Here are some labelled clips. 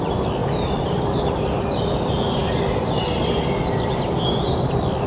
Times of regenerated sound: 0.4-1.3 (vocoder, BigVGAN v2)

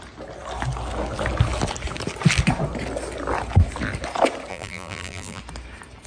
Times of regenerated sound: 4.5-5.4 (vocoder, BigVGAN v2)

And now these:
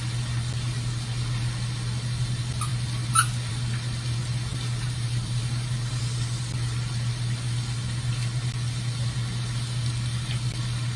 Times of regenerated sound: 4.5-6.0 (vocoder, BigVGAN v2)

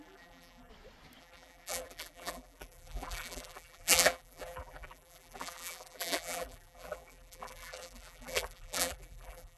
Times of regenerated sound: 0.0-0.7 (vocoder, BigVGAN v2); 1.2-9.6

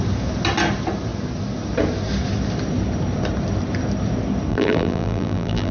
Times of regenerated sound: 4.5-5.7 (vocoder, BigVGAN v2)